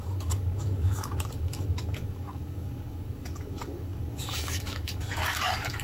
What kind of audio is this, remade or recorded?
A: remade